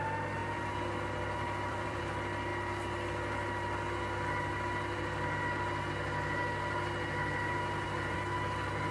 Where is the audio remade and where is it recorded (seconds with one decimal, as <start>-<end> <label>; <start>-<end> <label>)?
0.0-0.4 recorded; 0.4-2.0 remade; 2.0-8.9 recorded